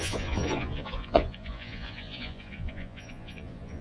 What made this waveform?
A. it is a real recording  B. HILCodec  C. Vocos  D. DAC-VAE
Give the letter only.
C